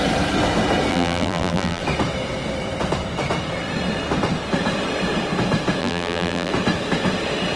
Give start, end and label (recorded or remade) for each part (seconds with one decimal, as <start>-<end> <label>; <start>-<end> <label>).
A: 0.0-0.9 recorded; 0.9-1.8 remade; 1.8-5.8 recorded; 5.8-6.5 remade; 6.5-7.6 recorded